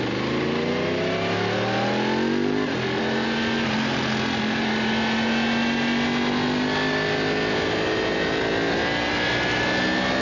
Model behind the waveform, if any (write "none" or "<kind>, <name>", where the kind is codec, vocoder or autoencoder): none